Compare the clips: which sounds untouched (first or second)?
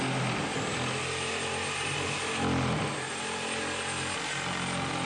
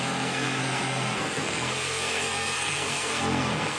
first